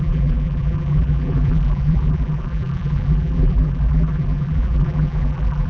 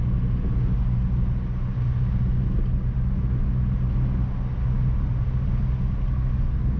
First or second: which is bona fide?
second